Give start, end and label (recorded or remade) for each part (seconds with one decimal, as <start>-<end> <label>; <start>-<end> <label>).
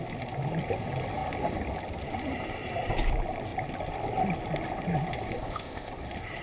0.0-5.4 recorded; 5.4-5.9 remade; 5.9-6.4 recorded